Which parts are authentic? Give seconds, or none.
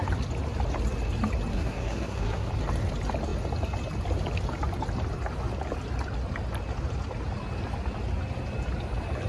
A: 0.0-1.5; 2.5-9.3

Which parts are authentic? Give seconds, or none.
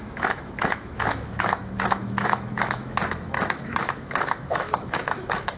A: none